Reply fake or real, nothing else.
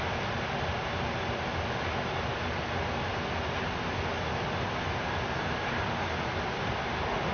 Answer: real